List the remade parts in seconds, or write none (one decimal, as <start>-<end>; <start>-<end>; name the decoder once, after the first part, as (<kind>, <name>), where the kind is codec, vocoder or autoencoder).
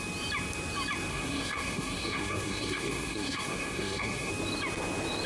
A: 1.1-4.3 (codec, SNAC)